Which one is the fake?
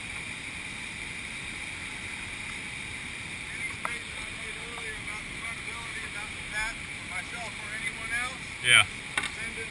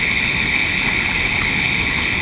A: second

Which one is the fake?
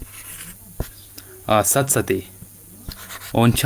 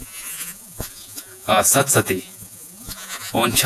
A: second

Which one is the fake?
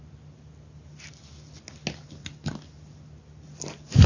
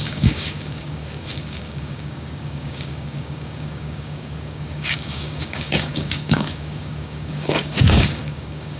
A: second